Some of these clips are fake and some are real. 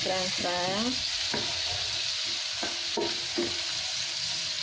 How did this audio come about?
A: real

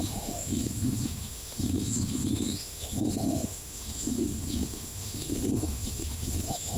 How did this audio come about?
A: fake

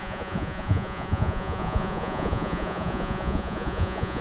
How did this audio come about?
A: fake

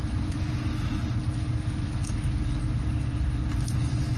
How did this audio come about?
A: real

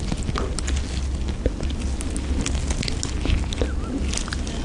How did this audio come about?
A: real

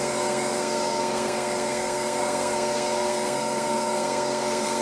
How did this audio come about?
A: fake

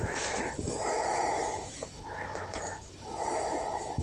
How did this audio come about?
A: fake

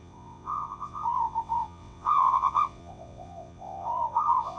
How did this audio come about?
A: fake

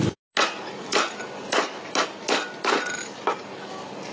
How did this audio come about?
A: real